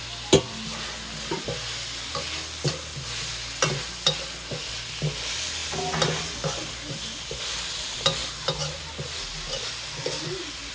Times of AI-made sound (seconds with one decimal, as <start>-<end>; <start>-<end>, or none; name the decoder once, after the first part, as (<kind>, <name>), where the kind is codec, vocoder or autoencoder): none